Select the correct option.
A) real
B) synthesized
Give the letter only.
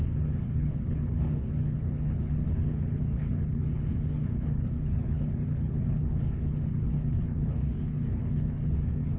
B